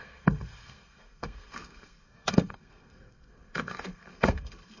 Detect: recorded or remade remade